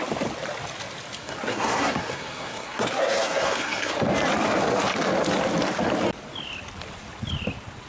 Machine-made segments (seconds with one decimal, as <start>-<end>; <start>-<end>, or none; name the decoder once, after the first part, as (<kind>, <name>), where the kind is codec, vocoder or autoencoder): 1.2-3.9 (codec, SNAC)